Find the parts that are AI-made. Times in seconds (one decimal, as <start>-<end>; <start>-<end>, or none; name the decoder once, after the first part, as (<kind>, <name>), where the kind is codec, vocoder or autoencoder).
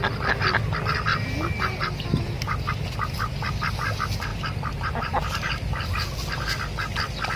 1.1-2.7 (vocoder, BigVGAN v2); 4.3-5.5